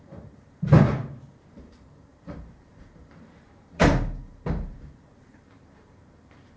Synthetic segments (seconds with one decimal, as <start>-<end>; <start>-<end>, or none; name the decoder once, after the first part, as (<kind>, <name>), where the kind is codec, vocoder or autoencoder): 0.0-6.6 (vocoder, BigVGAN v2)